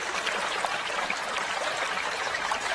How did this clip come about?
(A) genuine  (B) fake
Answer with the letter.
B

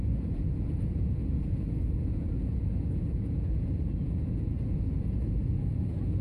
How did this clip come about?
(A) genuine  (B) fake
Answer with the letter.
B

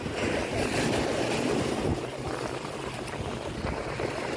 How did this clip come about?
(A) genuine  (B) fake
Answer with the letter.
A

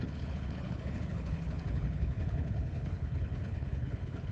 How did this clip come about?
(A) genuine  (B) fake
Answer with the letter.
B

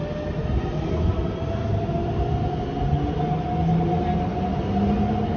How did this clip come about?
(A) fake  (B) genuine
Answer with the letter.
B